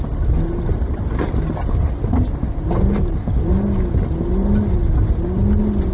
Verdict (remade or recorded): recorded